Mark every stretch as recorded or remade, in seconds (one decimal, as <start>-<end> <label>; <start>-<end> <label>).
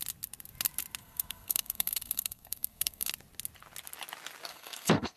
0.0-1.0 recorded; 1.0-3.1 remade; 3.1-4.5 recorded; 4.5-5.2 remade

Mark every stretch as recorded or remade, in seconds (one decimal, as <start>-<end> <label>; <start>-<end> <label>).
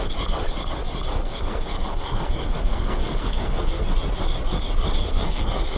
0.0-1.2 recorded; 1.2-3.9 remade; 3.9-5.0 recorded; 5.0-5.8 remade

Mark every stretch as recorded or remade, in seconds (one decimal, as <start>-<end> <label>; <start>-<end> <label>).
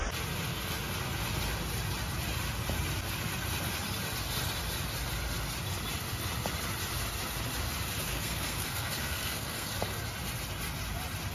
0.0-8.1 recorded; 8.1-9.7 remade; 9.7-11.3 recorded